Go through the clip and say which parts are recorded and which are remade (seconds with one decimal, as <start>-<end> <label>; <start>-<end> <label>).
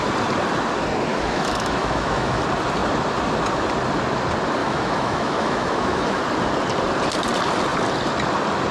0.0-1.1 recorded; 1.1-2.4 remade; 2.4-4.6 recorded; 4.6-6.2 remade; 6.2-8.7 recorded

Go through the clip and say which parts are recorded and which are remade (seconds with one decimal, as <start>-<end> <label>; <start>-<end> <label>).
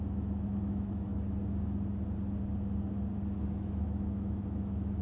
0.0-1.1 remade; 1.1-3.5 recorded; 3.5-5.0 remade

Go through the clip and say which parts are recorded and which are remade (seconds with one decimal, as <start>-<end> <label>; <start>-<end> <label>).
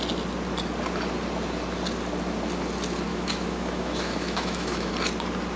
0.0-3.1 recorded; 3.1-4.9 remade; 4.9-5.6 recorded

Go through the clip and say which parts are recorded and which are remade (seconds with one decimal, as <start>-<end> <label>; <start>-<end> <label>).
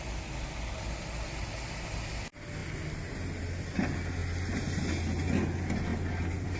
0.0-6.6 recorded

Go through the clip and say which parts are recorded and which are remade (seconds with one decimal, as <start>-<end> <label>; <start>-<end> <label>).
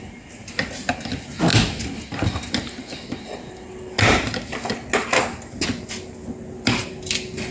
0.0-7.5 recorded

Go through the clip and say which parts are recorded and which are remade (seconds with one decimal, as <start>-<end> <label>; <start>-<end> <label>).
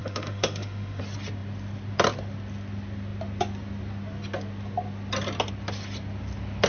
0.0-1.0 remade; 1.0-6.7 recorded